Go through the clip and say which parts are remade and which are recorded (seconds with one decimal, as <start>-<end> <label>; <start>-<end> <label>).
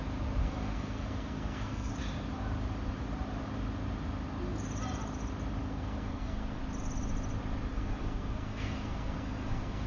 0.0-0.4 recorded; 0.4-1.9 remade; 1.9-5.6 recorded; 5.6-6.6 remade; 6.6-7.7 recorded; 7.7-9.9 remade